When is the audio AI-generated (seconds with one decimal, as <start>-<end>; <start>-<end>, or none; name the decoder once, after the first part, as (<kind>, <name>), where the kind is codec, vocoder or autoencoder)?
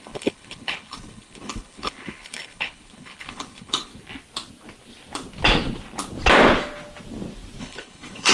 0.0-3.9 (codec, HILCodec); 7.6-8.3